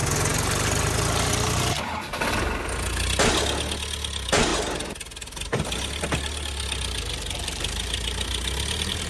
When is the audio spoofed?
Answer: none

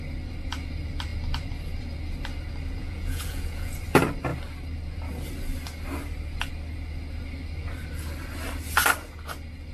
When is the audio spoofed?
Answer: 2.8-3.7 (vocoder, Vocos)

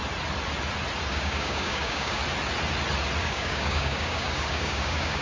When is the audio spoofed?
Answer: 1.1-2.2 (codec, DAC); 3.2-5.2

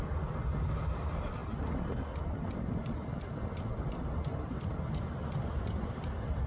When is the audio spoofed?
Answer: none